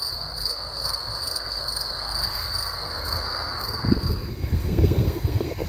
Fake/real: fake